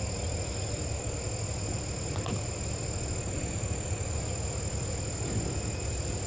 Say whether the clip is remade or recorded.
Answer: recorded